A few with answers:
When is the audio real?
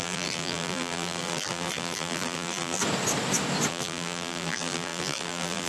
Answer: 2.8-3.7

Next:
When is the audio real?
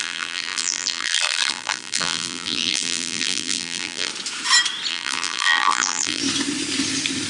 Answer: 4.1-4.9; 6.2-7.3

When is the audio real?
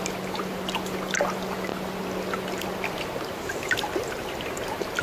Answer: 0.0-5.0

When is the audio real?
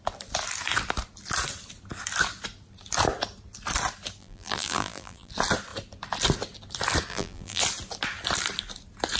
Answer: 0.0-4.2; 5.3-7.1; 7.6-9.2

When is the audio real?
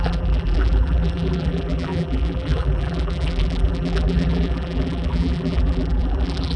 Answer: none